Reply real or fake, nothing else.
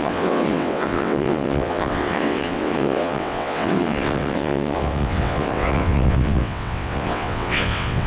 fake